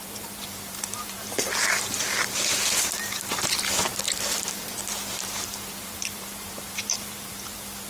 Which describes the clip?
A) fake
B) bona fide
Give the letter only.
A